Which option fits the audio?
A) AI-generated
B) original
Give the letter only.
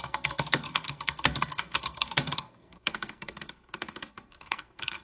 A